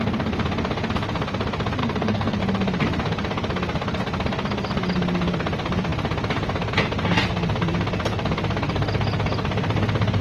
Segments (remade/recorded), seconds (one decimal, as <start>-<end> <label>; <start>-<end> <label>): 0.0-1.8 recorded; 1.8-2.4 remade; 2.4-10.2 recorded